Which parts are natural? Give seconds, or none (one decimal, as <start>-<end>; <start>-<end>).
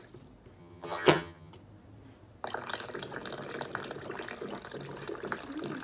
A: 0.0-0.6; 1.5-5.8